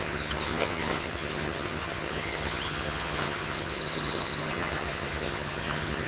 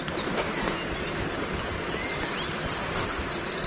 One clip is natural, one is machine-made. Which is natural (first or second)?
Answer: second